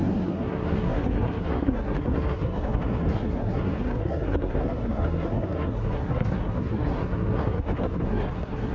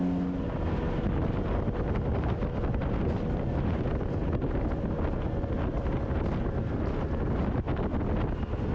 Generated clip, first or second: first